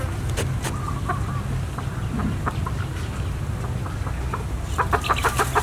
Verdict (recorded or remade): recorded